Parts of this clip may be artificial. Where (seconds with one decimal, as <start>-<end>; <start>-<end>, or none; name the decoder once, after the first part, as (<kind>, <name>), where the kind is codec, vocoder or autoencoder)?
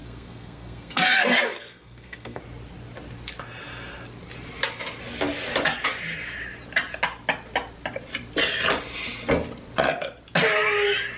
0.0-2.4 (codec, SNAC)